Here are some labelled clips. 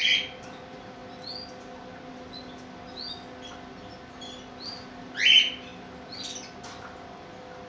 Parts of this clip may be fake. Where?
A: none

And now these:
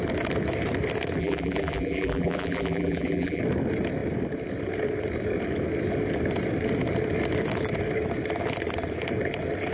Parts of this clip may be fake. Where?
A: 1.2-3.4 (vocoder, BigVGAN v2)

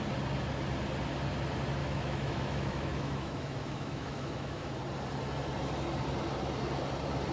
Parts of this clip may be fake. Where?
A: 1.8-4.8 (autoencoder, DAC-VAE)

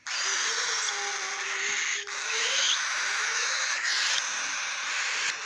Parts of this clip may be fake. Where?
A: 1.9-3.9 (autoencoder, DAC-VAE)

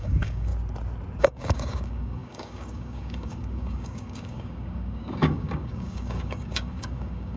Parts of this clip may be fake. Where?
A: 0.0-0.5 (codec, DAC); 1.2-7.4